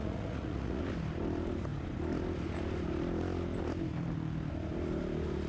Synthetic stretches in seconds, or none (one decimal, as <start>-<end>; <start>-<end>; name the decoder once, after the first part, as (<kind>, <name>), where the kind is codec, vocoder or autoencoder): 0.0-0.8 (vocoder, Vocos)